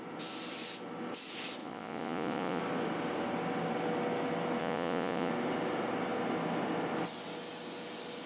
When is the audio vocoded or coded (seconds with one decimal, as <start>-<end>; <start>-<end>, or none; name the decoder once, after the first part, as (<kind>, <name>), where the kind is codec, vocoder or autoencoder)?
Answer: 1.6-2.6 (vocoder, Vocos); 4.6-5.3